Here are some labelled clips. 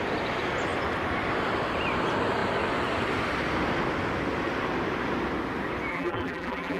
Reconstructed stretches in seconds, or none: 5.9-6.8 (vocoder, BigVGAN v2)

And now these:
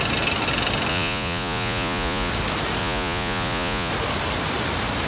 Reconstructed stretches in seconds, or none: 0.9-2.3 (vocoder, Vocos); 2.8-3.9

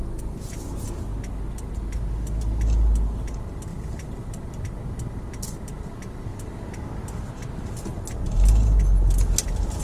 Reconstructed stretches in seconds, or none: none

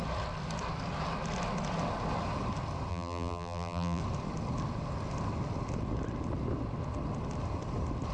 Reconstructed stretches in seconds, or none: 2.9-4.0 (vocoder, BigVGAN v2)

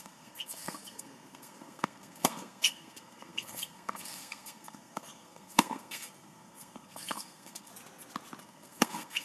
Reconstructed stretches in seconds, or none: 0.0-7.7 (codec, SNAC); 8.4-9.2

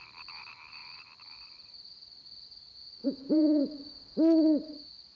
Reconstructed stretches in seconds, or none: 3.0-3.6 (vocoder, Vocos)

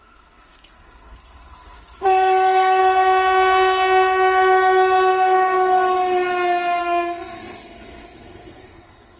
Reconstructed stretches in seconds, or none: 0.0-2.8 (codec, SNAC); 6.8-9.2